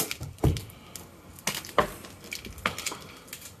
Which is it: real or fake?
real